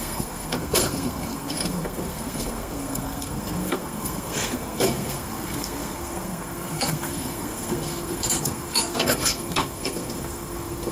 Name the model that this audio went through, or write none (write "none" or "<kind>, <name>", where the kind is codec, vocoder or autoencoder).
codec, SNAC